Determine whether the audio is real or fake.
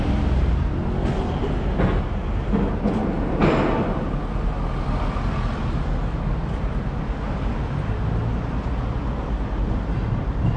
real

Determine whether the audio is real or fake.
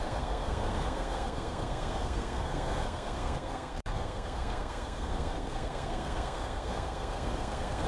fake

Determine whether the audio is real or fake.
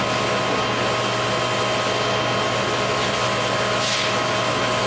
real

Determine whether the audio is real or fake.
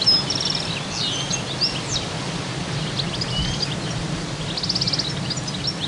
real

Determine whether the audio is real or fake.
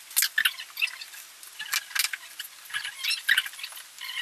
real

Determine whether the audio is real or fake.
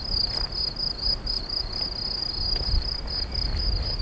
real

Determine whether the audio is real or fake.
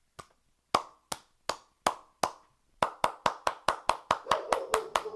real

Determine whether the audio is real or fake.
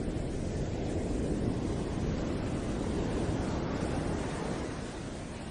real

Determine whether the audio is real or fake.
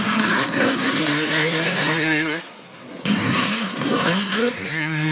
fake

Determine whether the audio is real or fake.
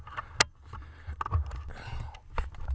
real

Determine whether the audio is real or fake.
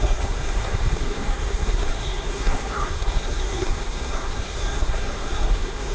fake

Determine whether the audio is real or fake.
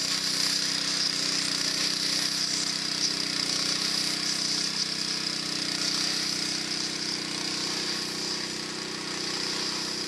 real